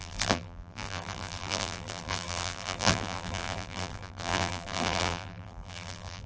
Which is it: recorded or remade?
remade